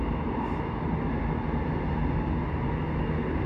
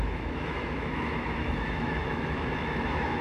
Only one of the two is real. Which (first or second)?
first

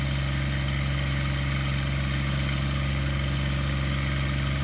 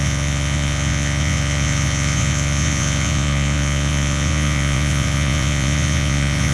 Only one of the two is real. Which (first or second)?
first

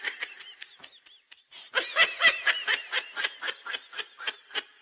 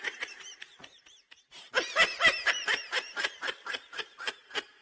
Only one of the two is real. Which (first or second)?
first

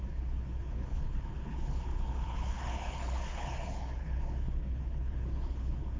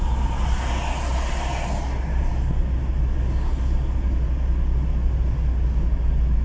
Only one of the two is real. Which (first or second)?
second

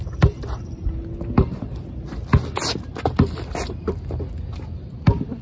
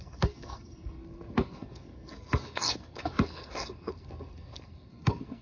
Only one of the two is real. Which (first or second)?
first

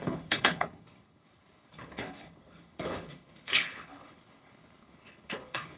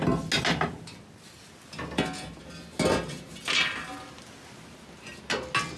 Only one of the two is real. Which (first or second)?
second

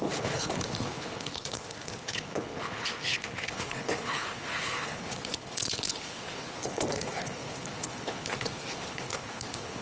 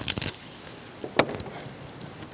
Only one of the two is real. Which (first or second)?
second